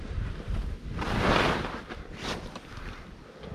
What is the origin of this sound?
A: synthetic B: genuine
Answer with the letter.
B